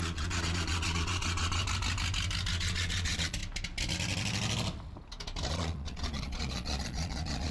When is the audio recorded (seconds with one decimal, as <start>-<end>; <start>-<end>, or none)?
1.6-2.5; 3.4-5.5